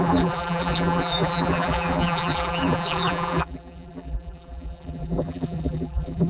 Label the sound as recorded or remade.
remade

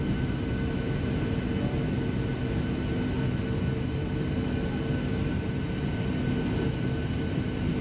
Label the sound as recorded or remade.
recorded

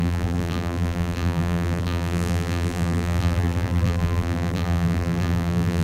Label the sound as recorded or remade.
remade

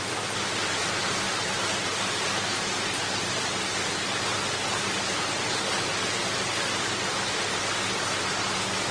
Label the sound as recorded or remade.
recorded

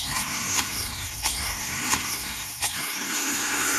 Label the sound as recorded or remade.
remade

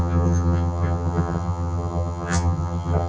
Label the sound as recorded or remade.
remade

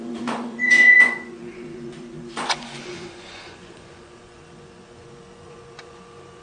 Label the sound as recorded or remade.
remade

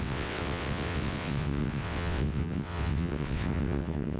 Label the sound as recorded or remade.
remade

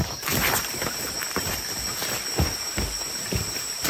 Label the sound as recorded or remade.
recorded